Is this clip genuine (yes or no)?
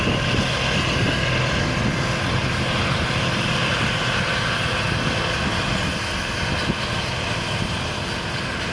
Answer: yes